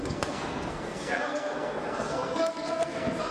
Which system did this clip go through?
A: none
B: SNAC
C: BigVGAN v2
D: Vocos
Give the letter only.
B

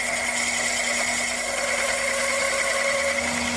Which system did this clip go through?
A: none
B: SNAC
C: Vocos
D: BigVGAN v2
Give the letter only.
A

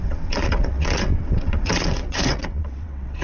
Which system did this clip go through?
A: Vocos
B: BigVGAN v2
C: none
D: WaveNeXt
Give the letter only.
D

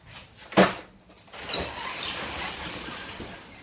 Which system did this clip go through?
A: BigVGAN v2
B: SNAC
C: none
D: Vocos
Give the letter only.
C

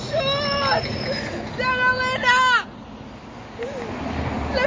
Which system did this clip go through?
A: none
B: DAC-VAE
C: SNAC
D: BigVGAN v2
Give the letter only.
A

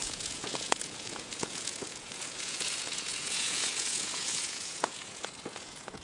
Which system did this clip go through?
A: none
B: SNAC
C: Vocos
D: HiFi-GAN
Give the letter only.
C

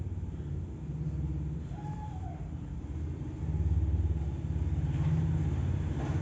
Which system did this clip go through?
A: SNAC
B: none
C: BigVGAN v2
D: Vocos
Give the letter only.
B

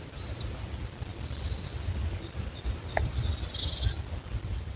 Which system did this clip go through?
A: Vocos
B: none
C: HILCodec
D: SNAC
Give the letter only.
B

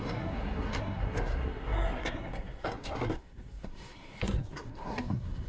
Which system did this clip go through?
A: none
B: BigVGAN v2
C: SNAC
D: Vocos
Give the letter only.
C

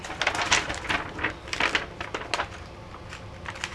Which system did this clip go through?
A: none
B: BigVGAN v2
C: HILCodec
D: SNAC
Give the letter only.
A